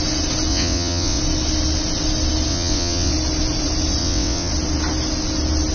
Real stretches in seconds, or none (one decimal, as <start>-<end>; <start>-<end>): 0.0-0.5; 1.2-2.5; 3.1-4.0; 4.5-5.7